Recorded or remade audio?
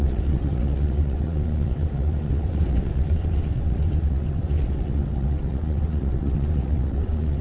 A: remade